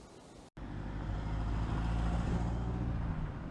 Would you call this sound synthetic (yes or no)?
no